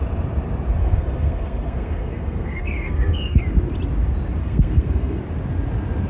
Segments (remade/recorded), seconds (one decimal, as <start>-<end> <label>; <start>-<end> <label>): 0.0-0.8 recorded; 0.8-3.4 remade; 3.4-4.4 recorded; 4.4-5.2 remade; 5.2-6.1 recorded